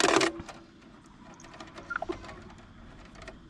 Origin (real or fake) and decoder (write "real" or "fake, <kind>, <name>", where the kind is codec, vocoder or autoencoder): real